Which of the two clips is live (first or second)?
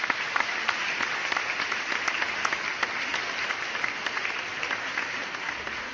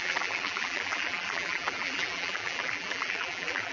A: first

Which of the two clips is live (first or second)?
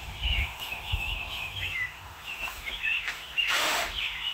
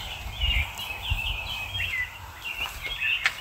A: second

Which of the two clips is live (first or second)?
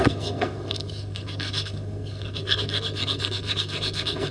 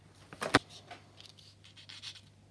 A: second